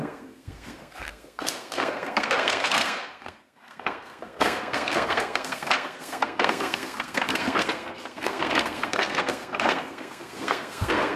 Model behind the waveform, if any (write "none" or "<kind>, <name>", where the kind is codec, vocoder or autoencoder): codec, SNAC